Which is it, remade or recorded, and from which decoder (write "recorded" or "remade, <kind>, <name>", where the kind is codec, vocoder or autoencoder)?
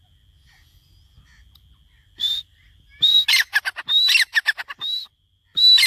recorded